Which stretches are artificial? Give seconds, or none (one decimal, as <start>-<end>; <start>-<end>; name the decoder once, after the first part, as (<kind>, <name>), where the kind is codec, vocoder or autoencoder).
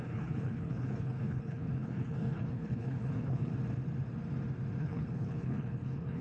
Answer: 0.0-3.5 (codec, HILCodec); 4.8-6.2